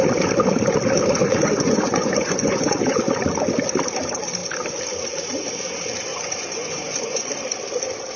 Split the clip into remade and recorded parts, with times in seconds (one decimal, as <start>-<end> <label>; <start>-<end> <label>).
0.0-1.2 recorded; 1.2-3.0 remade; 3.0-6.1 recorded; 6.1-7.3 remade; 7.3-8.2 recorded